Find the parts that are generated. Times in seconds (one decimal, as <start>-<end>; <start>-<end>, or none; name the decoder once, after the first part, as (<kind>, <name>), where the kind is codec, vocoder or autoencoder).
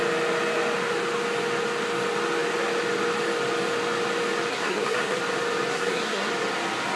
4.5-5.2 (codec, SNAC); 5.7-6.3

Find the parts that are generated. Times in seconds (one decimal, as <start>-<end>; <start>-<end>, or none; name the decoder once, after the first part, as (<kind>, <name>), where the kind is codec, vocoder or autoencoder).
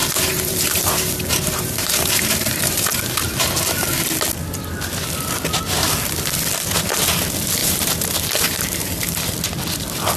0.0-3.3 (vocoder, BigVGAN v2); 7.6-8.9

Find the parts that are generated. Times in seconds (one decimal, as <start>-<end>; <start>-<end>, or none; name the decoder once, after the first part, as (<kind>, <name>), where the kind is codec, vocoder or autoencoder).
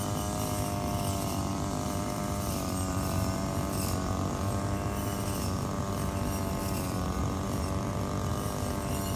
1.3-4.3 (vocoder, BigVGAN v2); 6.6-7.2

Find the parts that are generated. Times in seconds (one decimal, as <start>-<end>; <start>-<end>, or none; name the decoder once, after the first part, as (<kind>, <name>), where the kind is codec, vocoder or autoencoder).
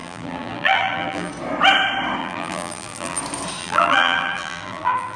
0.0-1.3 (vocoder, BigVGAN v2); 2.2-3.2; 3.6-5.2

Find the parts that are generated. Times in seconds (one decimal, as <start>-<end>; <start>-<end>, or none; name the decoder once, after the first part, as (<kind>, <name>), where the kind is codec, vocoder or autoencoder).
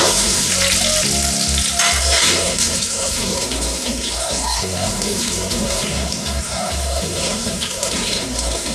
0.0-0.5 (codec, SNAC); 2.0-8.7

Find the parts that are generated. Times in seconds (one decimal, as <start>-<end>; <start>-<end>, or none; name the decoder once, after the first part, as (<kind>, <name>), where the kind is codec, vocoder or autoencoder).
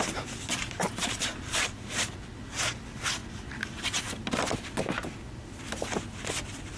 1.3-1.9 (vocoder, BigVGAN v2)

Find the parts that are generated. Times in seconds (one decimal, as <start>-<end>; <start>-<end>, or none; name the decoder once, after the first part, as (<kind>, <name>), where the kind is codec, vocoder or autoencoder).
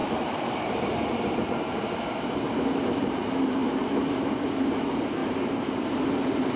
0.0-1.0 (vocoder, BigVGAN v2); 5.2-5.7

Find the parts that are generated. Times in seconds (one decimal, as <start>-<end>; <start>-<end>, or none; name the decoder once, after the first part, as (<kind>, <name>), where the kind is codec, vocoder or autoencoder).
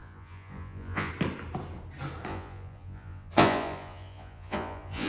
0.0-1.1 (vocoder, Vocos); 2.3-5.1